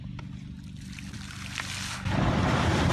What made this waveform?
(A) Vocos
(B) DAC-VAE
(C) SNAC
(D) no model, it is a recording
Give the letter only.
D